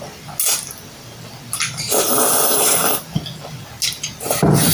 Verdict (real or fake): real